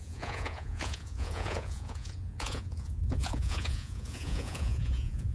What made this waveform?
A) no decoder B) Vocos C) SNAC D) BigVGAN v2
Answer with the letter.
B